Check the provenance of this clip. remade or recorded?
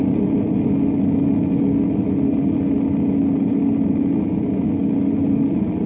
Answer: recorded